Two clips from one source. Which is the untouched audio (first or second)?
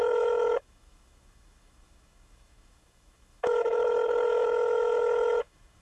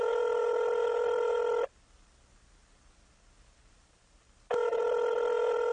second